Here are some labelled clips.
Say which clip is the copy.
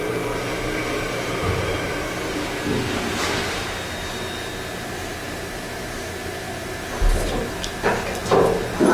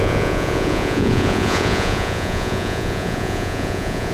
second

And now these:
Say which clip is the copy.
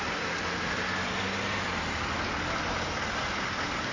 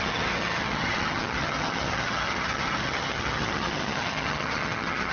second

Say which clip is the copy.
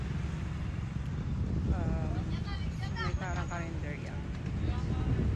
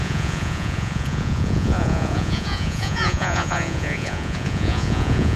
second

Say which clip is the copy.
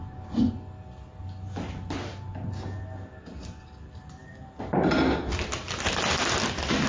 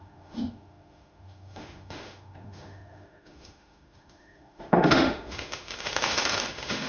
second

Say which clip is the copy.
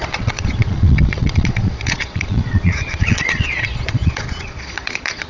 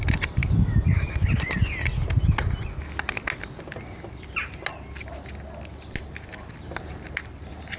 first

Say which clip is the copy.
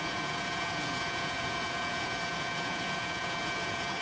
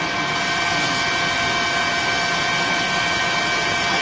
first